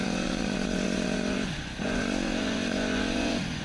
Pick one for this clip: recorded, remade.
remade